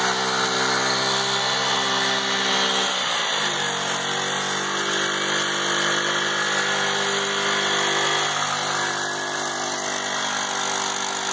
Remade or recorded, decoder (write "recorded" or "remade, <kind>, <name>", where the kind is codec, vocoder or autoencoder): recorded